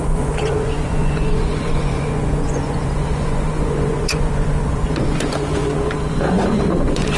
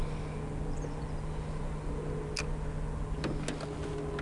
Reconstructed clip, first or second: first